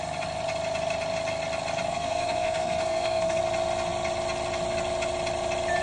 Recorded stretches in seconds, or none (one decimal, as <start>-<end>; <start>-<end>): 0.0-1.9; 3.4-5.8